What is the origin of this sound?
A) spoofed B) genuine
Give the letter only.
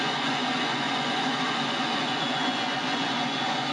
A